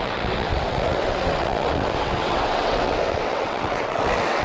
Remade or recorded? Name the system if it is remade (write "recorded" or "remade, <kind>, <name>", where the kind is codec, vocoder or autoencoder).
remade, vocoder, WaveNeXt